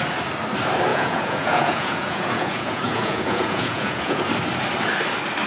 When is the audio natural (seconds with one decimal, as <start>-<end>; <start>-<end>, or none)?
0.0-0.9; 4.2-5.5